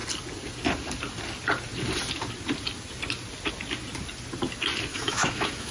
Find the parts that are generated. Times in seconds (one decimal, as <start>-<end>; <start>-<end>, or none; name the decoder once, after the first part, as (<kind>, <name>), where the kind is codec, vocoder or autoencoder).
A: 4.9-5.7 (autoencoder, DAC-VAE)